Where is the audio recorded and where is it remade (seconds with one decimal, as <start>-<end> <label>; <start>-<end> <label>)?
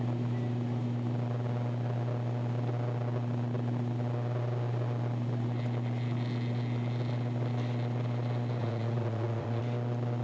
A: 0.0-8.6 recorded; 8.6-9.6 remade; 9.6-10.2 recorded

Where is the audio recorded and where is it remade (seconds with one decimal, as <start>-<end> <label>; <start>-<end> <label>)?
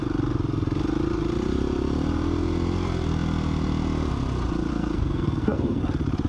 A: 0.0-4.7 recorded; 4.7-5.8 remade; 5.8-6.3 recorded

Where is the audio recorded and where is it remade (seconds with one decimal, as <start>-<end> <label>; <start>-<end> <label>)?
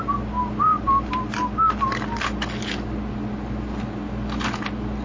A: 0.0-5.0 recorded